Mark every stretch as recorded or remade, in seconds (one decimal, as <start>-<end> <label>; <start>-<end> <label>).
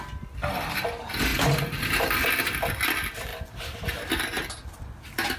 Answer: 0.0-5.4 recorded